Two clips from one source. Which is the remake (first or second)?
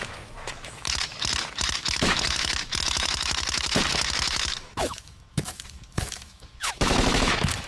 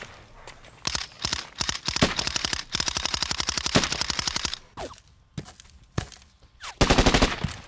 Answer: first